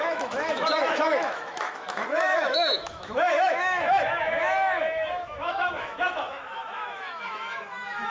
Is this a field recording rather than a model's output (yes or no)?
no